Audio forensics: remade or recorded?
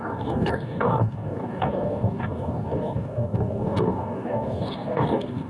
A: remade